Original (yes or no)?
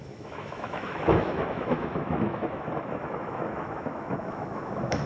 no